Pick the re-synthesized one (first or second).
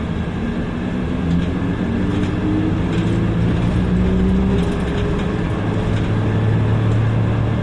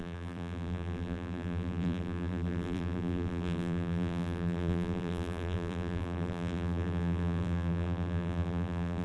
second